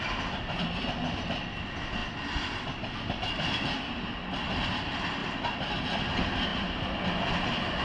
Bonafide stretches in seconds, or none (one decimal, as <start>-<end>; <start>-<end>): 0.0-2.0; 4.7-6.5; 7.0-7.8